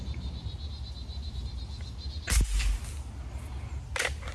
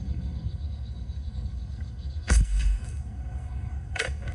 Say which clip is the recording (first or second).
first